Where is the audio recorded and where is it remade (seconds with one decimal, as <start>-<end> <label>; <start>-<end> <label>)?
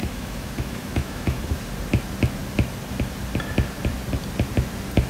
0.0-1.4 remade; 1.4-5.1 recorded